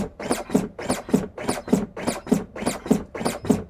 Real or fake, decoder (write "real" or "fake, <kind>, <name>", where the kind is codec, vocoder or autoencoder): fake, vocoder, BigVGAN v2